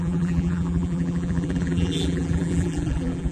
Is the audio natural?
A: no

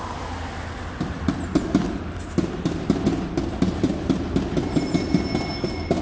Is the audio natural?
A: yes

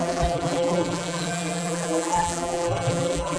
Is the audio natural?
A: no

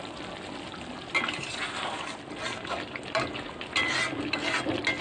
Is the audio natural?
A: yes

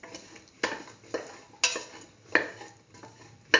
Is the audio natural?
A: yes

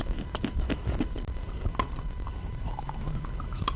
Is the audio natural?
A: yes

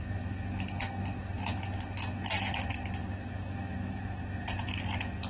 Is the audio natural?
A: yes